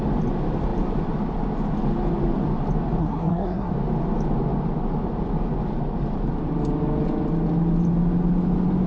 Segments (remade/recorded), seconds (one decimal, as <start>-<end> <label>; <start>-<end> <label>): 0.0-3.0 recorded; 3.0-3.7 remade; 3.7-8.9 recorded